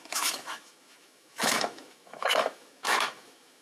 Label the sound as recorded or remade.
remade